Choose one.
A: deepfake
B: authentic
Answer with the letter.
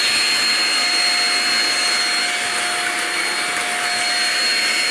B